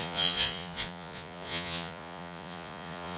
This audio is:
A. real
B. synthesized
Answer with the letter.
B